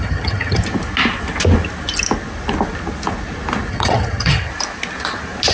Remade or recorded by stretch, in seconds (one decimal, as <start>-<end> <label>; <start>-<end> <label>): 0.0-0.6 remade; 0.6-3.7 recorded; 3.7-4.5 remade; 4.5-5.5 recorded